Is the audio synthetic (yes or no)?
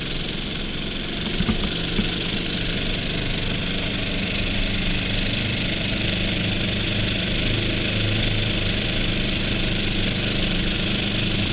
no